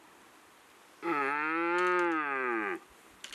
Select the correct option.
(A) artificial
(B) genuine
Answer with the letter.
B